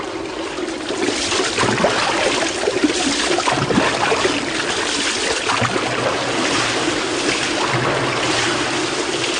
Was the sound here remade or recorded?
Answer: recorded